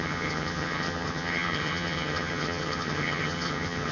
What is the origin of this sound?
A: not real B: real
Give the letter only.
A